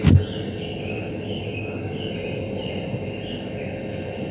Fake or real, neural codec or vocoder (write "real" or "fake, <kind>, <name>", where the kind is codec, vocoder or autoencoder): real